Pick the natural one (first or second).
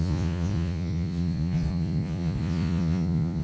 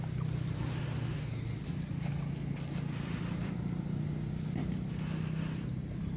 second